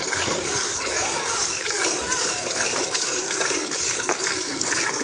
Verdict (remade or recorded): remade